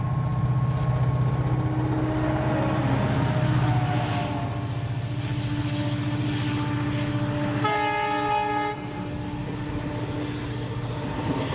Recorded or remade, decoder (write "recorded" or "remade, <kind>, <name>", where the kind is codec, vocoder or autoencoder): recorded